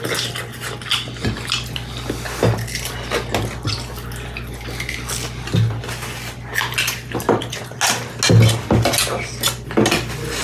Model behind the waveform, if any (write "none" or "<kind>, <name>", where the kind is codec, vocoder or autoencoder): none